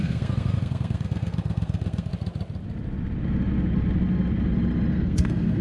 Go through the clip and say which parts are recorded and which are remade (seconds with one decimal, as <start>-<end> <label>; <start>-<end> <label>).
0.0-2.1 remade; 2.1-4.9 recorded; 4.9-5.6 remade